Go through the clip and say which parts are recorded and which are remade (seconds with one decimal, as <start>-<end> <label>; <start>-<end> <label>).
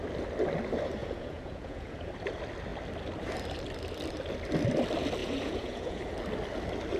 0.0-1.0 recorded; 1.0-2.1 remade; 2.1-5.2 recorded; 5.2-6.0 remade; 6.0-7.0 recorded